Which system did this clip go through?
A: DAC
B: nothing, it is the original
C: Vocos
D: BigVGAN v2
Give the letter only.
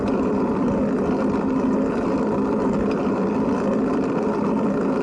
B